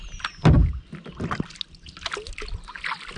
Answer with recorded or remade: recorded